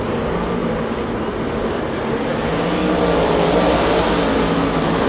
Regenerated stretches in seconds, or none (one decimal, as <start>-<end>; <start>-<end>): none